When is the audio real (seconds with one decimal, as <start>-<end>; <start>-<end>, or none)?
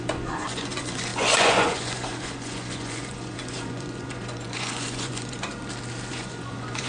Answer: 5.5-6.1